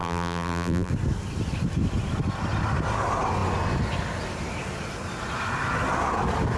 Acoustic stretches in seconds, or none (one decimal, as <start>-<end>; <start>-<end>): 0.9-6.6